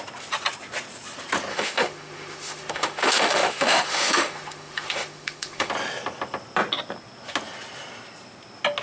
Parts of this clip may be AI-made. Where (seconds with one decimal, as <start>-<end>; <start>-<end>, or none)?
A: 1.5-5.7